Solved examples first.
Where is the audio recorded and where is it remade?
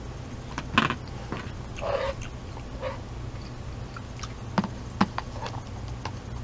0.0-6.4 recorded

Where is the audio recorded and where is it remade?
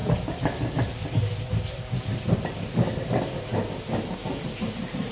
0.0-5.1 recorded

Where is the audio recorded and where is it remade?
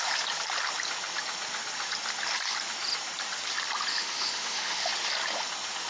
0.0-3.9 recorded; 3.9-4.9 remade; 4.9-5.9 recorded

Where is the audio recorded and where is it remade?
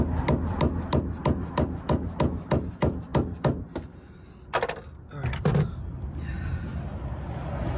0.0-7.8 recorded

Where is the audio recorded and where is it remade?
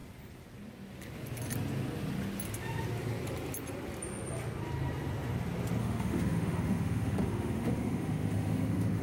0.0-5.8 recorded; 5.8-9.0 remade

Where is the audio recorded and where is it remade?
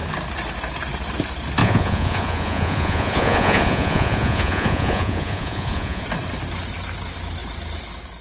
0.0-1.6 recorded; 1.6-6.0 remade; 6.0-8.2 recorded